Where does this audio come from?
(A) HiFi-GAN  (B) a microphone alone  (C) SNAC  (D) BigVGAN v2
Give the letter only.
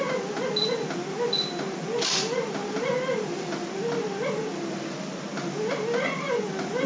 B